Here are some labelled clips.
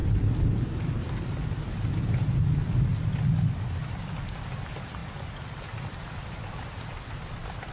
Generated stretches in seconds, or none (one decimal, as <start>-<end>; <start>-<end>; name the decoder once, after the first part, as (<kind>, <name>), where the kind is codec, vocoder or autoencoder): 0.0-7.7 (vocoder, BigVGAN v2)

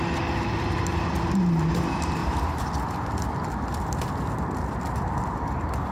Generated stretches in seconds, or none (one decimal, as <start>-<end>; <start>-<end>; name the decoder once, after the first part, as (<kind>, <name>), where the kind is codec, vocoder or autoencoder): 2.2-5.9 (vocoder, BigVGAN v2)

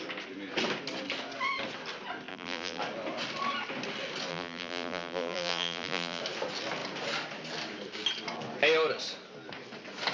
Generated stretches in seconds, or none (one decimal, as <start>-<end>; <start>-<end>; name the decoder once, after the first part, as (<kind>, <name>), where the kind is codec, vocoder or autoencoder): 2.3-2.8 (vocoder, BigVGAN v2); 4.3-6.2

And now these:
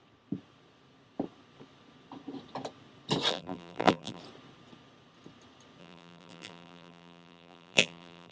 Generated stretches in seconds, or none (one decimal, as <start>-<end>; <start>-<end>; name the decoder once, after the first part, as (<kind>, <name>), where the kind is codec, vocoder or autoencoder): 3.3-4.2 (vocoder, BigVGAN v2); 5.8-8.3